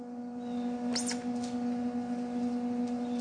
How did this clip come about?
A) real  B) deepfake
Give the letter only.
A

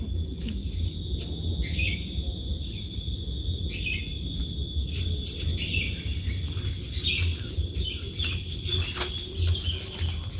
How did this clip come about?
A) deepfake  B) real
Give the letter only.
B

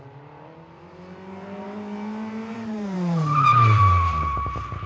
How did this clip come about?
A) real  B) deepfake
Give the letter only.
B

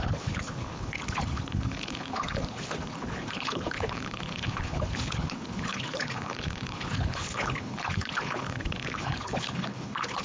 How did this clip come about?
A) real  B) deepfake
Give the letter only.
B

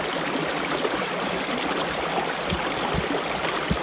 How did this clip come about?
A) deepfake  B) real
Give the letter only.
B